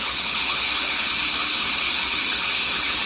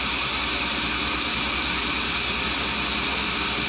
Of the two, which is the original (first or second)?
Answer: second